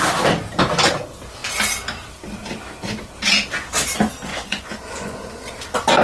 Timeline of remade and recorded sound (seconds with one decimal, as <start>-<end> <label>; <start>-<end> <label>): 0.0-4.3 recorded; 4.3-5.5 remade; 5.5-6.0 recorded